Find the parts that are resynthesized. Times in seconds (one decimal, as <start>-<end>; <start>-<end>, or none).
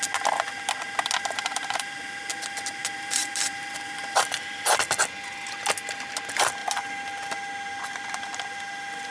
1.5-2.3; 2.8-4.7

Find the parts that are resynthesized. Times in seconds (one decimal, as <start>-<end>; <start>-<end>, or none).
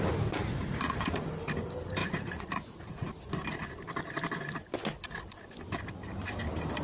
0.4-1.2; 2.0-3.1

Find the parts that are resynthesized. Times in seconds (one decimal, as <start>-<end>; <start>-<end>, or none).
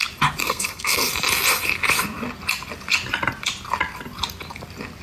0.4-1.1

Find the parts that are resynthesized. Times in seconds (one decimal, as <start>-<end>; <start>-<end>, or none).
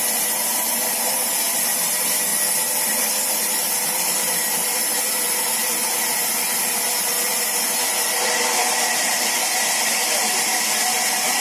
0.0-2.3; 3.0-4.6; 8.6-11.4